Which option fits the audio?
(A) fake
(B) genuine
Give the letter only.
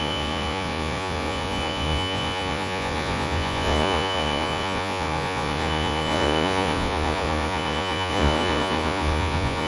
A